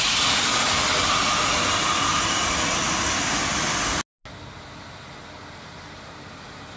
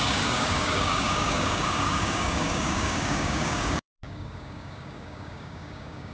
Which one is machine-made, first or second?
second